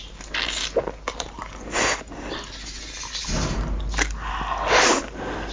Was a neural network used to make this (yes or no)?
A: no